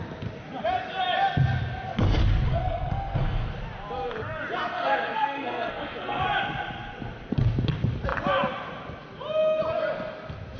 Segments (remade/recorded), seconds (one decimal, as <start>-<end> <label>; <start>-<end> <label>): 0.0-2.5 recorded; 2.5-3.5 remade; 3.5-4.7 recorded; 4.7-6.2 remade; 6.2-10.6 recorded